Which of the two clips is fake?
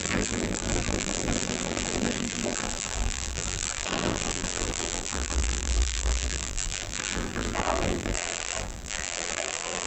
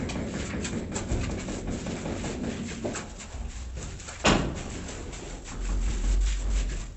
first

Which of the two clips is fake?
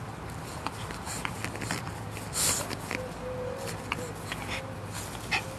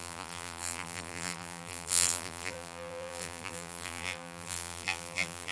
second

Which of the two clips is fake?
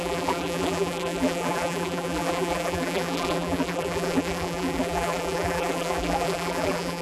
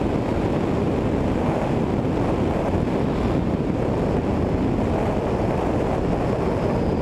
first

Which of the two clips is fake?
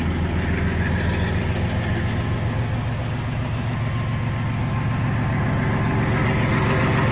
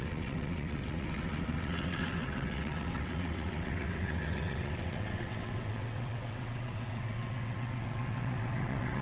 second